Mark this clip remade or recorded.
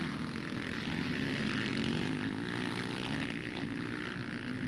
recorded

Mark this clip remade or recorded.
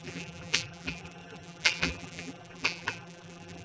remade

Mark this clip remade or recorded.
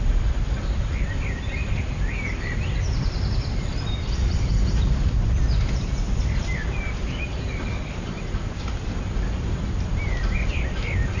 remade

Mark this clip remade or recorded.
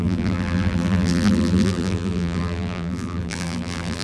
remade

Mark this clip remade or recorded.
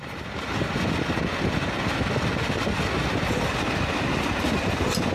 recorded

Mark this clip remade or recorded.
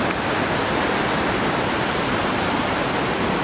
recorded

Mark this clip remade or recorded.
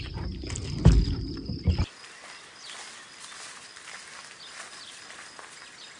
recorded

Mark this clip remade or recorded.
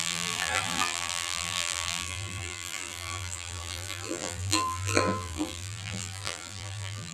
remade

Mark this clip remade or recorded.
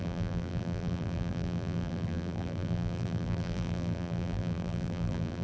remade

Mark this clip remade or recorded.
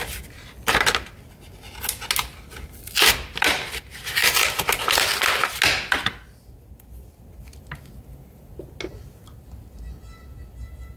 recorded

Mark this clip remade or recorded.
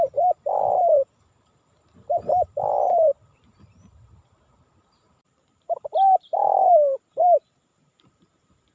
remade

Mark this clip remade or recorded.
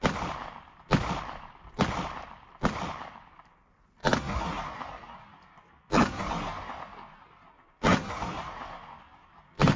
recorded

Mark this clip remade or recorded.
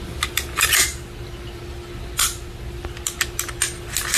recorded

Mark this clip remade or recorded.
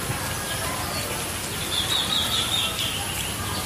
recorded